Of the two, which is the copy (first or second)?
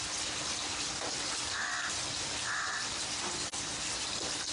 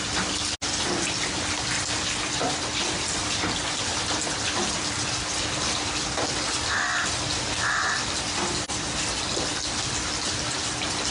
first